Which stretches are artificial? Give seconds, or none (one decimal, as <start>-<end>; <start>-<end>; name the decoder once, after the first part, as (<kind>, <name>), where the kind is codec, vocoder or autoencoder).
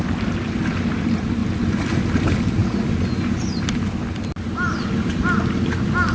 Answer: none